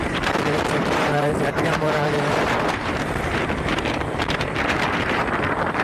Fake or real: fake